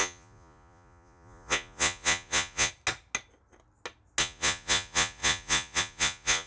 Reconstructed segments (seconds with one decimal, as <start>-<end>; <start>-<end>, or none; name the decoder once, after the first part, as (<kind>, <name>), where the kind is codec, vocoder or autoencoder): 0.0-2.7 (vocoder, Vocos); 4.2-6.5